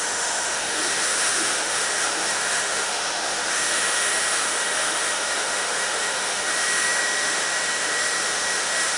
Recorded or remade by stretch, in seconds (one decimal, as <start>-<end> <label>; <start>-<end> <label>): 0.0-9.0 remade